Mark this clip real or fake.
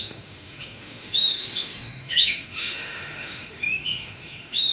fake